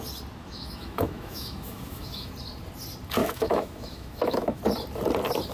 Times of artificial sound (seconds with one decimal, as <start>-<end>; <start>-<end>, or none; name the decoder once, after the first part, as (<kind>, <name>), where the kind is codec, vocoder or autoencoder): 0.4-2.3 (autoencoder, DAC-VAE); 3.2-4.6